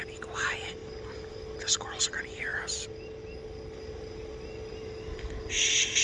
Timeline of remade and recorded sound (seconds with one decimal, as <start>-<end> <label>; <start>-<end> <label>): 0.0-6.0 recorded